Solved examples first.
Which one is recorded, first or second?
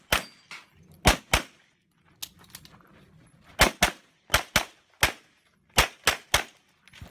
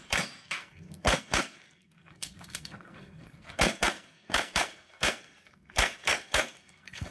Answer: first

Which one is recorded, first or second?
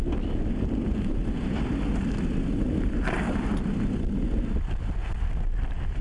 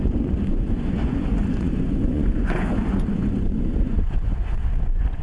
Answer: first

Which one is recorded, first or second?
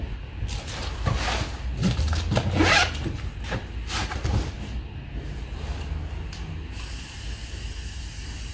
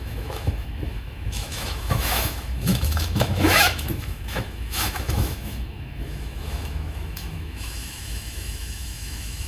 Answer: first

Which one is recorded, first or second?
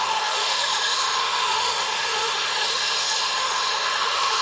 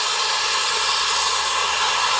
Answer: second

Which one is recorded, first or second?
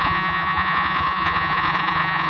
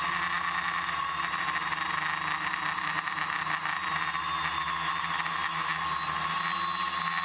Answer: second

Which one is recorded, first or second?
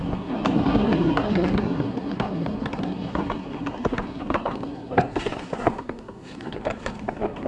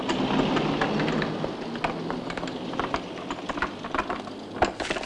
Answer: second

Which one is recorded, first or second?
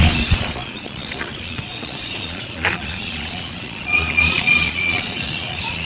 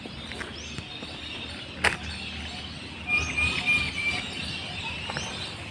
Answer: second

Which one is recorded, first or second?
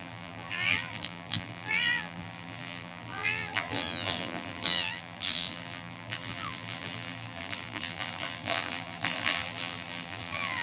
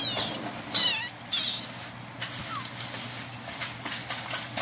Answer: second